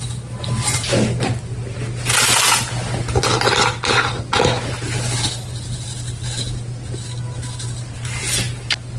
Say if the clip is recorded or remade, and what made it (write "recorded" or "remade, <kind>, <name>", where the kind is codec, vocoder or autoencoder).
recorded